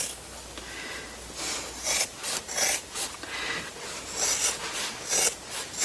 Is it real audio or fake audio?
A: real